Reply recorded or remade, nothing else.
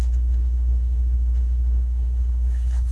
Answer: remade